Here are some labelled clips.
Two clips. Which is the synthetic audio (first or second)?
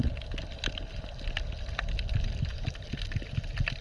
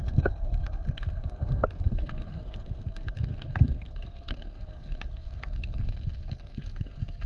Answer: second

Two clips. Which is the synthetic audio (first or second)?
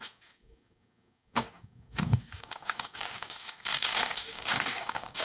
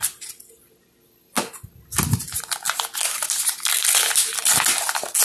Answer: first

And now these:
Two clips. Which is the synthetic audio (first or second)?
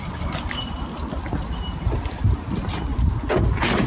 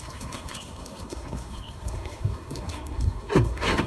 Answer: second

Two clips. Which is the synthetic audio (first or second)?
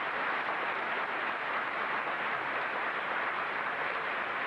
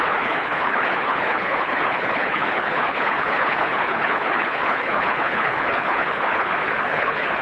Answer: second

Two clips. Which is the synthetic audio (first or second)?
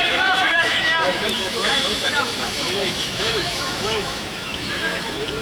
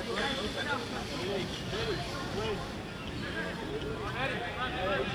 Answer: first